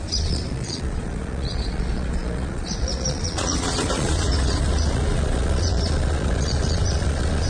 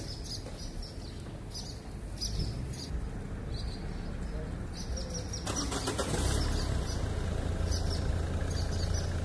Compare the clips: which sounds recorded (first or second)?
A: second